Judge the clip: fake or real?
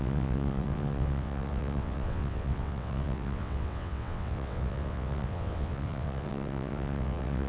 fake